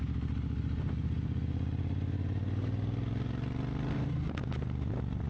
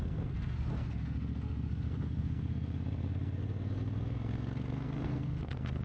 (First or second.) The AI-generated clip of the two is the second